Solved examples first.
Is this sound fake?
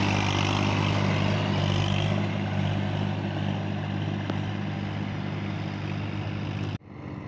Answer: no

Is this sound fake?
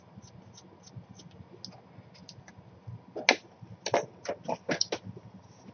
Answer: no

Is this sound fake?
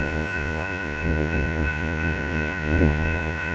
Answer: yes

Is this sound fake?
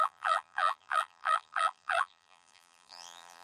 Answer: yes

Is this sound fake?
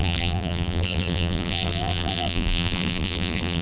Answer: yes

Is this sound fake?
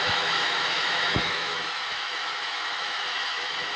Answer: yes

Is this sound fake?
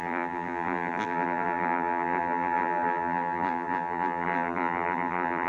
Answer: yes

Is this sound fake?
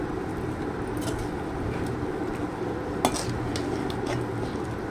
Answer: no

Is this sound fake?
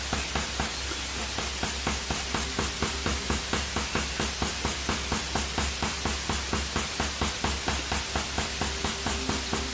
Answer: no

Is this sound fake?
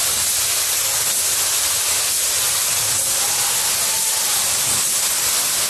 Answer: no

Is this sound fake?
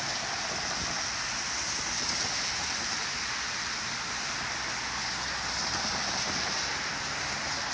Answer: no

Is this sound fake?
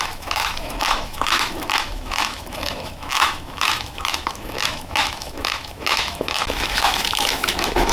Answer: yes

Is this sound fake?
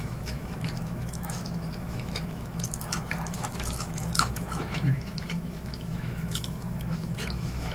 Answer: yes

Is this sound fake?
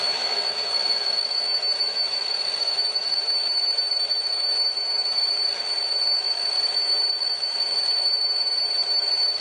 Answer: yes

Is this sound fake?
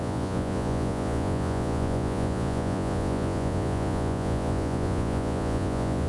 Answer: yes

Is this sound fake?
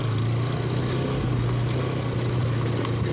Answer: no